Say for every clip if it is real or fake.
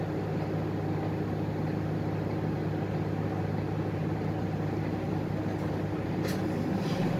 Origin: real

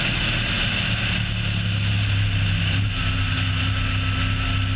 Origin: real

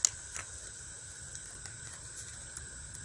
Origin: real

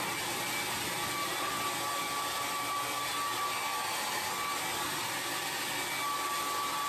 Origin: real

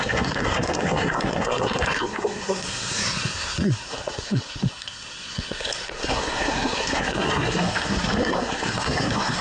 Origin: fake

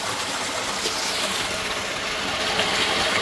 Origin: real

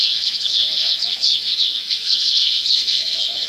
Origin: fake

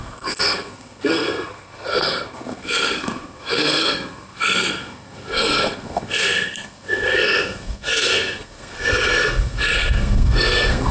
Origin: fake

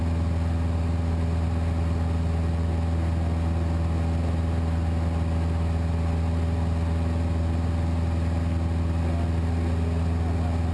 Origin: real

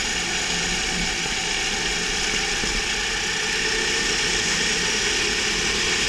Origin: real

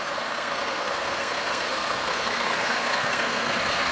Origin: fake